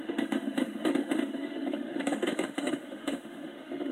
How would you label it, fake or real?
fake